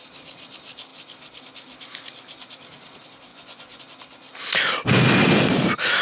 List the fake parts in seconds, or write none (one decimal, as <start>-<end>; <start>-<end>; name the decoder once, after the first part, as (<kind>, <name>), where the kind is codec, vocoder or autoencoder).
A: 3.3-3.8 (vocoder, Vocos)